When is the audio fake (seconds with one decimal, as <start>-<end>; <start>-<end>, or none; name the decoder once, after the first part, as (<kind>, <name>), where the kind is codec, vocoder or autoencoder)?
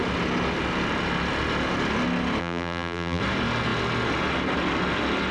2.4-3.2 (vocoder, BigVGAN v2)